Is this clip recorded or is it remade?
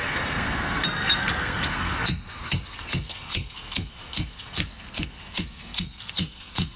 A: remade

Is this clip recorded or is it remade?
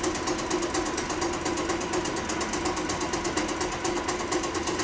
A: recorded